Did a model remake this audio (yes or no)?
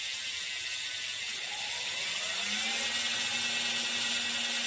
no